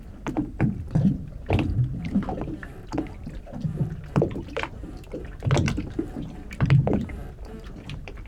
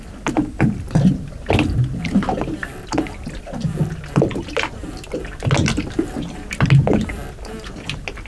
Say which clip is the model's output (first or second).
first